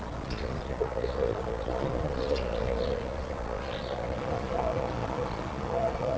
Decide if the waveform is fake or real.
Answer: fake